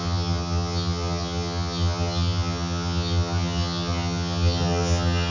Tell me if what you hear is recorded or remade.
remade